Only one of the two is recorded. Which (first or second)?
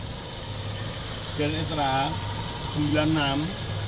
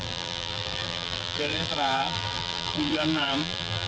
first